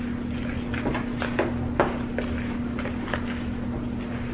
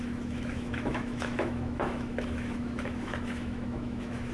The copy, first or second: second